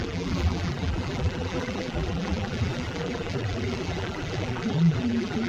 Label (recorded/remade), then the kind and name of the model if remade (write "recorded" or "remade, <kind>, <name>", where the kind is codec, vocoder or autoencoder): remade, vocoder, BigVGAN v2